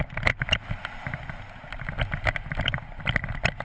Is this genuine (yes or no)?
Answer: no